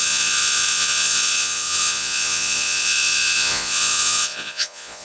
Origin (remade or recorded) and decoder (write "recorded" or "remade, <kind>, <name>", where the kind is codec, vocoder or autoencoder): remade, vocoder, Vocos